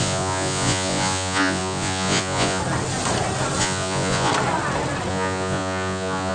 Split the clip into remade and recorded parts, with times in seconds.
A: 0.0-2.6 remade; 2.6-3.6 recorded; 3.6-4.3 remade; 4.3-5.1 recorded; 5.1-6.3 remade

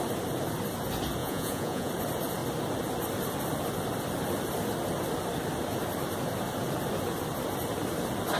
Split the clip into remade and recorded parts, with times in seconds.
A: 0.0-1.2 recorded; 1.2-1.9 remade; 1.9-8.4 recorded

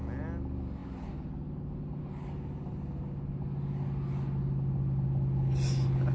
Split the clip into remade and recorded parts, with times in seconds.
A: 0.0-6.1 recorded

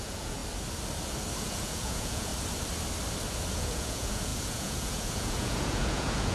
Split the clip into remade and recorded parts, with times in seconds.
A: 0.0-0.4 remade; 0.4-1.4 recorded; 1.4-2.3 remade; 2.3-3.5 recorded; 3.5-6.3 remade

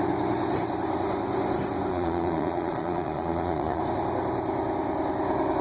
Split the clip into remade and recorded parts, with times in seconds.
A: 0.0-1.9 recorded; 1.9-3.8 remade; 3.8-5.6 recorded

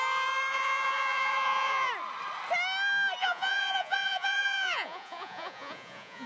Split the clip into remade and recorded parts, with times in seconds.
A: 0.0-0.5 recorded; 0.5-1.9 remade; 1.9-3.2 recorded; 3.2-6.3 remade